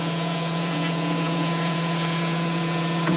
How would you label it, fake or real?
fake